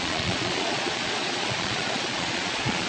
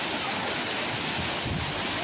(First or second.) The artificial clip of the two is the first